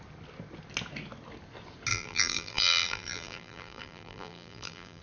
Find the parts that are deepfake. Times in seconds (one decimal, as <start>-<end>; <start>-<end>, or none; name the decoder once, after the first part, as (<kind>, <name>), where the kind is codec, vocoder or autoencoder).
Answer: 1.9-5.0 (vocoder, BigVGAN v2)